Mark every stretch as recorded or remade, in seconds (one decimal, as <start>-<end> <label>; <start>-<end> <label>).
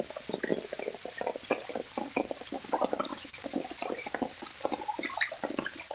0.0-3.1 recorded; 3.1-3.7 remade; 3.7-5.9 recorded